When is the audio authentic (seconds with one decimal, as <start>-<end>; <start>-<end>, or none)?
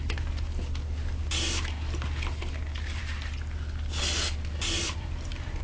0.0-5.6